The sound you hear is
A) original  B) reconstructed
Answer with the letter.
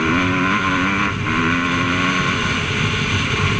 A